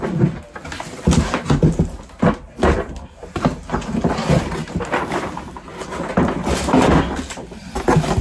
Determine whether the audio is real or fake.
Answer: real